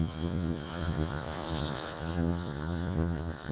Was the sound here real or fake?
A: fake